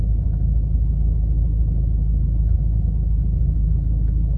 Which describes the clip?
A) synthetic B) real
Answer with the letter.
A